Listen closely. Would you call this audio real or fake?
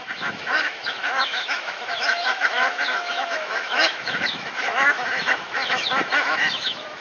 fake